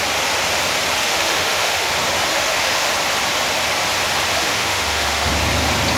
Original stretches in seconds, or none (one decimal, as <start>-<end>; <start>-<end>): 0.0-1.0; 1.9-2.3; 2.9-4.3; 5.3-6.0